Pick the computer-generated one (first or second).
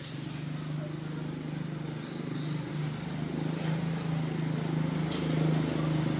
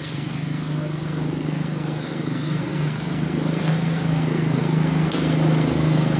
second